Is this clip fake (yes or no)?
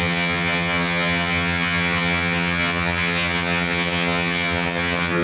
yes